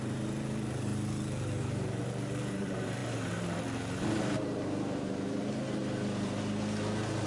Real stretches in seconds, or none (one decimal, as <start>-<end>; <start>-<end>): 0.9-1.6; 5.8-7.3

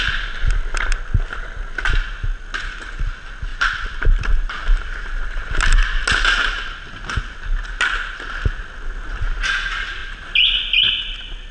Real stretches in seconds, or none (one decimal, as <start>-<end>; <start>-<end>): 0.0-3.5; 5.6-10.0; 10.9-11.5

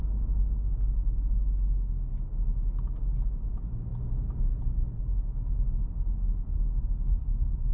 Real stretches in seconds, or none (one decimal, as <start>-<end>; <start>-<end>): 0.0-7.7

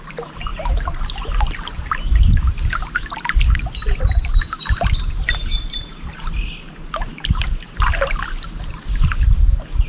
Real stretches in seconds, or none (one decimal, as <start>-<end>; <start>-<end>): 0.0-3.8; 4.6-9.9

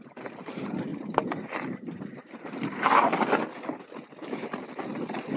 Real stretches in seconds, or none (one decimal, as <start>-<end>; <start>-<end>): 0.0-0.9; 3.3-5.4

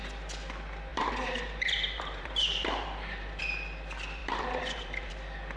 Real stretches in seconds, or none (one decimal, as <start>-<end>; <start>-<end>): 0.0-0.9; 3.4-4.2; 5.1-5.6